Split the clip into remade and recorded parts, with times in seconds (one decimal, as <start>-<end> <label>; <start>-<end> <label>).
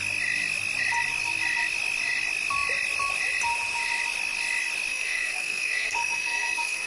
0.0-4.9 recorded; 4.9-6.9 remade